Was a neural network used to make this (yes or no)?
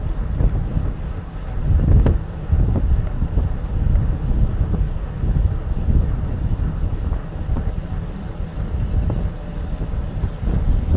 no